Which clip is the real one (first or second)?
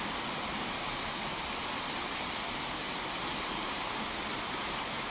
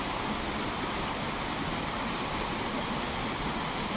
first